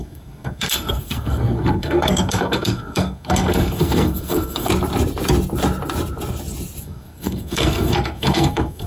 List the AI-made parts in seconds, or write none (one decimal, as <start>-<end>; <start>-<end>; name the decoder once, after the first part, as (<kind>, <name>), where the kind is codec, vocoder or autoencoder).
0.0-4.7 (codec, SNAC); 6.8-8.9